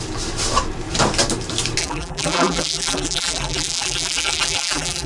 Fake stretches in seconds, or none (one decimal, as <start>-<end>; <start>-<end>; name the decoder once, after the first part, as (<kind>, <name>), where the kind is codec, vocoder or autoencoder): 1.8-5.1 (vocoder, BigVGAN v2)